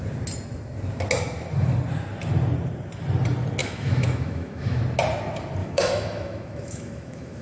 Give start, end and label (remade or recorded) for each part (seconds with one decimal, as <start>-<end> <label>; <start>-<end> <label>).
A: 0.0-3.6 recorded; 3.6-4.8 remade; 4.8-5.6 recorded; 5.6-7.4 remade